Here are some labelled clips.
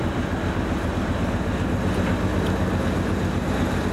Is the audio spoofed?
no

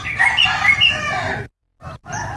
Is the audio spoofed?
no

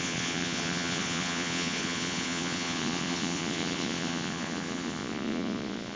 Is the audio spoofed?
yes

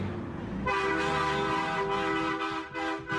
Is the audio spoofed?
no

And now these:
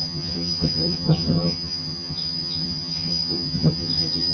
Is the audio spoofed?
yes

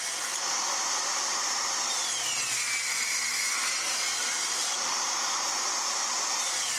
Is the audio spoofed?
no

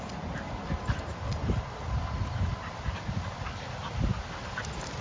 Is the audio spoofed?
no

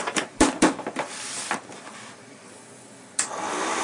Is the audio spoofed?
yes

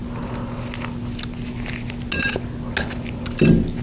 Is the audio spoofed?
no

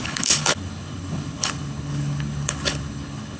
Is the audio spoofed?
yes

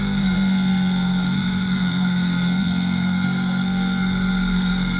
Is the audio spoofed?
yes